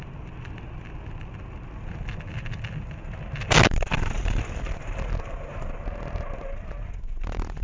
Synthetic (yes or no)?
no